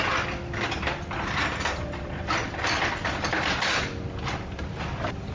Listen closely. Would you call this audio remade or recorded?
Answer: recorded